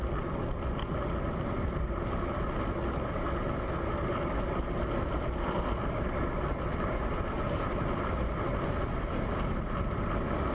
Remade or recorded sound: recorded